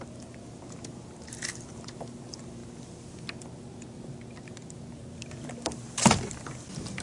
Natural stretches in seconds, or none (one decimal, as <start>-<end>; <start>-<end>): 0.0-7.0